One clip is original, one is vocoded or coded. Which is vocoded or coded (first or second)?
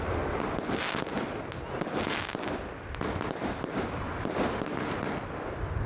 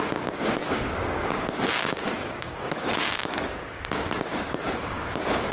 second